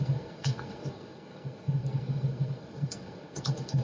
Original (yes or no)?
no